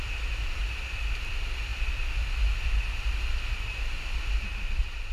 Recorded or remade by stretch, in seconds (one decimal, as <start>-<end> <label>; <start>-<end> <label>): 0.0-5.1 recorded